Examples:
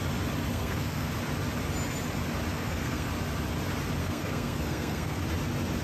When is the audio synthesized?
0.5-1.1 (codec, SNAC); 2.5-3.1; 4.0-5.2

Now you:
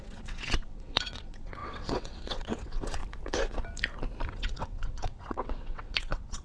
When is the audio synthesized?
0.0-3.0 (vocoder, WaveNeXt); 4.3-6.4

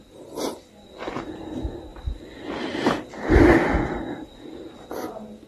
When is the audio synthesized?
1.9-4.7 (vocoder, BigVGAN v2)

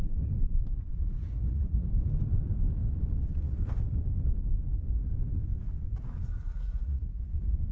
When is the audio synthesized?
0.9-1.9 (vocoder, Vocos); 6.3-7.2